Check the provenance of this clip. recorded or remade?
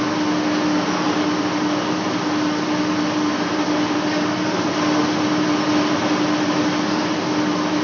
recorded